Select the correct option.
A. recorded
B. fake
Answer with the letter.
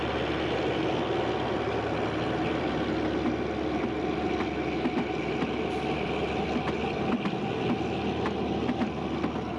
A